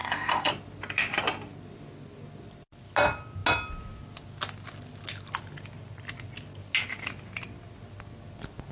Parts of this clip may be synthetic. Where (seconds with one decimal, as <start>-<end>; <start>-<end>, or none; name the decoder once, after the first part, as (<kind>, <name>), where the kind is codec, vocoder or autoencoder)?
0.0-0.5 (codec, SNAC)